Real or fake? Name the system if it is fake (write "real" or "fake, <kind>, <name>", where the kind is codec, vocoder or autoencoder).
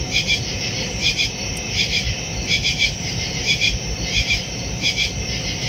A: fake, vocoder, BigVGAN v2